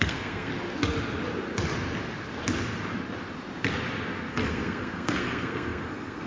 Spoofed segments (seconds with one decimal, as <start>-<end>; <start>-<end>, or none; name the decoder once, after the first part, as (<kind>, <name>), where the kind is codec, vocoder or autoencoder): 0.0-0.5 (codec, SNAC); 4.3-6.3